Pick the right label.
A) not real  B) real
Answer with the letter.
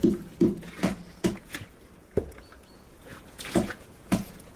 A